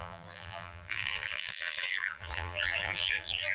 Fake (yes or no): yes